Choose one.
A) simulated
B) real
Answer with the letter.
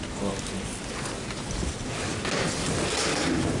B